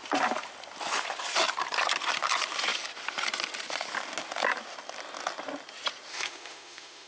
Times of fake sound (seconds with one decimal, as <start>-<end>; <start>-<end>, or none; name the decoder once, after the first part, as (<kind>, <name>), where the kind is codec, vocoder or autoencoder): 6.1-7.1 (autoencoder, DAC-VAE)